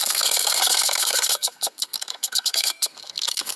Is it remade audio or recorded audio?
remade